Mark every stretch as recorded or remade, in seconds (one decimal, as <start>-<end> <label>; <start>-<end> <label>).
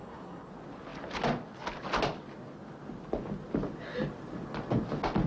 0.0-0.5 remade; 0.5-5.3 recorded